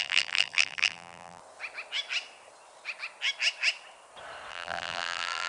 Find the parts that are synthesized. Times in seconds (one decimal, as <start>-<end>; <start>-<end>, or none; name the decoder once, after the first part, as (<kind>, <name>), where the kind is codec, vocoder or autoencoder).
0.0-1.4 (vocoder, BigVGAN v2); 4.5-5.5